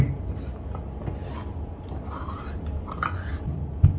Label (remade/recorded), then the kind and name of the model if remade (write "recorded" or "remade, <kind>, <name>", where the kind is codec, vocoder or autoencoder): recorded